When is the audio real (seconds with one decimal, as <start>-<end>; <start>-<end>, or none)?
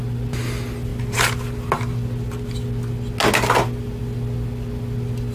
0.0-5.3